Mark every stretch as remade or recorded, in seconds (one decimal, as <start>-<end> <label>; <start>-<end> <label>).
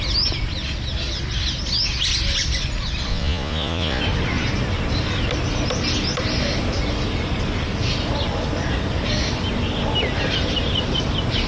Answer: 0.0-3.1 recorded; 3.1-4.0 remade; 4.0-11.5 recorded